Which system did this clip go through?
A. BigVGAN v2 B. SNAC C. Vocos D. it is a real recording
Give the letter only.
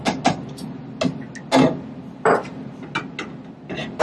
D